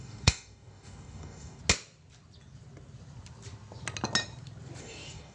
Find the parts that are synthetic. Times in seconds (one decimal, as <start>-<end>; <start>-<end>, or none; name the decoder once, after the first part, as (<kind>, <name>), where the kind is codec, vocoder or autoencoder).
0.0-1.6 (codec, DAC); 4.8-5.3